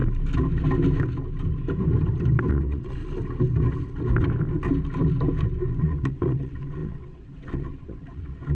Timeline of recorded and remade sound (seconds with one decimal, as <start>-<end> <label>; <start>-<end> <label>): 0.0-2.5 recorded; 2.5-3.0 remade; 3.0-5.8 recorded; 5.8-8.5 remade